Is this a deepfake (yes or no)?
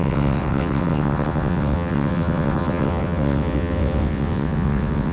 yes